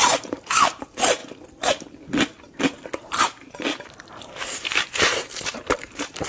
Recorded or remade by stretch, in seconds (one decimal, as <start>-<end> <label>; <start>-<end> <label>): 0.0-1.2 remade; 1.2-4.2 recorded; 4.2-6.3 remade